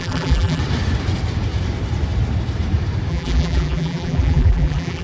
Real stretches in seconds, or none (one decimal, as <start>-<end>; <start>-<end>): 0.6-3.1